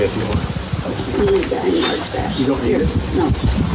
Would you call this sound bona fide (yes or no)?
yes